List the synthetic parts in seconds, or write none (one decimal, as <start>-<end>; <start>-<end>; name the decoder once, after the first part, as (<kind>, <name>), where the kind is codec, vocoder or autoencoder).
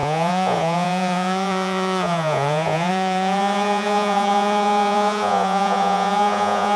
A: 0.0-6.8 (vocoder, Vocos)